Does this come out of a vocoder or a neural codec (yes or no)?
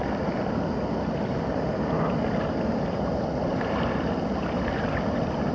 no